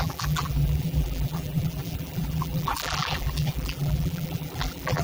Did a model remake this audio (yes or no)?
yes